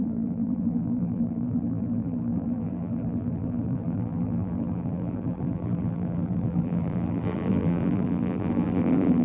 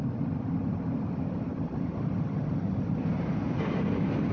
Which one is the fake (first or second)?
first